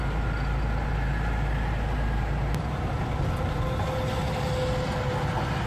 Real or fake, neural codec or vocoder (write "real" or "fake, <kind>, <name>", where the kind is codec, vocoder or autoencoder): real